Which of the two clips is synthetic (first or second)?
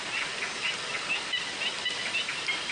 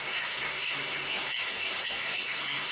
second